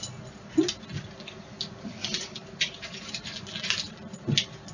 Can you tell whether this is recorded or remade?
recorded